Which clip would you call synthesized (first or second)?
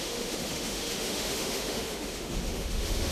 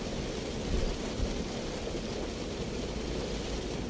first